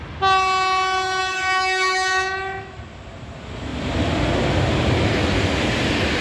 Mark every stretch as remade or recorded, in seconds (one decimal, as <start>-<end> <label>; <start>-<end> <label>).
0.0-1.2 recorded; 1.2-2.8 remade; 2.8-6.2 recorded